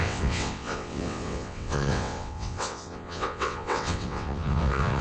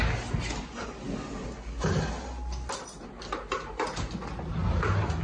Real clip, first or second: second